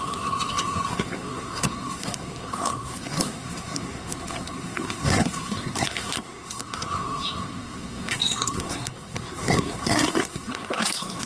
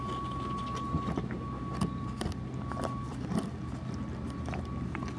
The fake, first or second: first